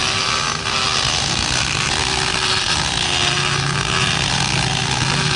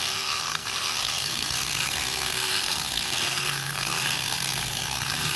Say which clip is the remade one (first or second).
second